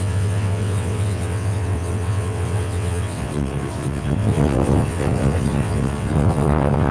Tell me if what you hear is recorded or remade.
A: remade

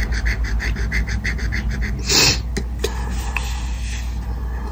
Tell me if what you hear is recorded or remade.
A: recorded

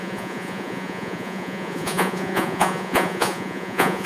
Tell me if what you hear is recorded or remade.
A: remade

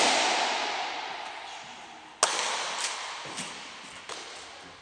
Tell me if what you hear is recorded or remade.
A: recorded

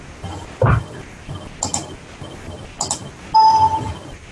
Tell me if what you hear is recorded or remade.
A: recorded